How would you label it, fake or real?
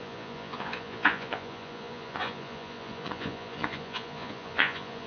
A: fake